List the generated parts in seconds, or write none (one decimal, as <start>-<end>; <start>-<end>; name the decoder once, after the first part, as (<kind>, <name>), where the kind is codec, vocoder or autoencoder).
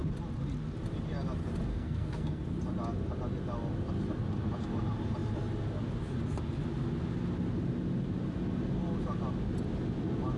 1.7-2.4 (codec, SNAC)